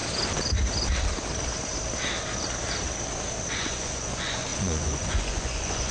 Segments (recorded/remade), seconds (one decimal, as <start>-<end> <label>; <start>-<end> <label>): 0.0-3.5 recorded; 3.5-5.9 remade